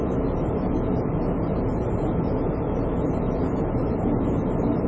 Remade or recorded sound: recorded